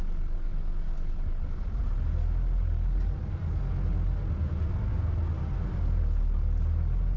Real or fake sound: real